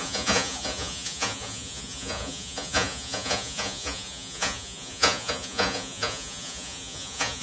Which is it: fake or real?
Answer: fake